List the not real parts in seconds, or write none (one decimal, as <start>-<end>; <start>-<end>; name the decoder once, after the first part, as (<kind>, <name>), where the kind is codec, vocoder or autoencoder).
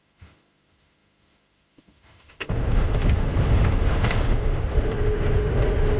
0.0-6.0 (autoencoder, DAC-VAE)